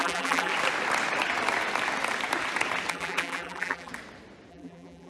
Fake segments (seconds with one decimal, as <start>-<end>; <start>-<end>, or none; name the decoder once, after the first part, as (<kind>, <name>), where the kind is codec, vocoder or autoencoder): 0.0-0.5 (vocoder, BigVGAN v2); 2.9-3.9; 4.5-5.1